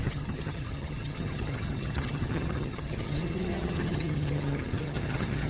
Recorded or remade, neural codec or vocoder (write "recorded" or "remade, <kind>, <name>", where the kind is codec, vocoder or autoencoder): remade, vocoder, HiFi-GAN